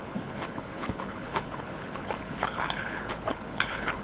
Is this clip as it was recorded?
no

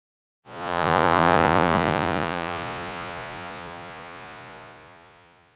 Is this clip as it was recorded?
no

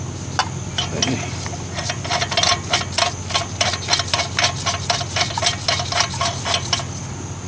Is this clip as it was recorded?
yes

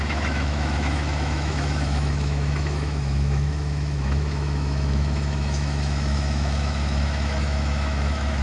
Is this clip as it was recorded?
no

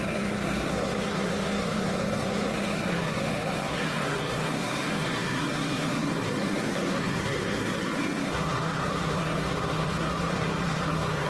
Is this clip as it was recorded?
no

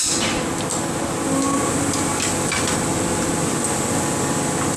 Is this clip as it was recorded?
yes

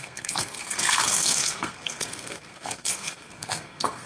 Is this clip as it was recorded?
no